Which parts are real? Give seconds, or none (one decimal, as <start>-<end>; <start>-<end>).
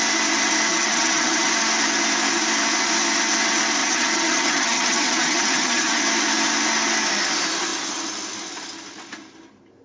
0.0-0.7; 1.5-3.8; 6.0-9.8